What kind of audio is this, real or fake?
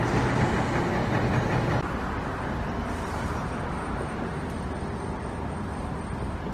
real